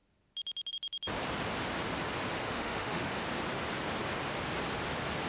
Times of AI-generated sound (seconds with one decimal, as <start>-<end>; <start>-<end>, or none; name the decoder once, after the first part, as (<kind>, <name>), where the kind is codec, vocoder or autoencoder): 2.4-3.2 (autoencoder, DAC-VAE)